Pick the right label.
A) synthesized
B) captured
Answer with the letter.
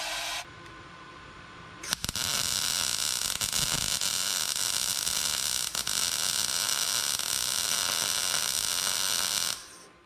B